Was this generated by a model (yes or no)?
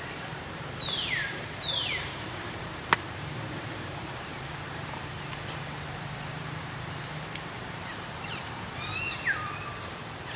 yes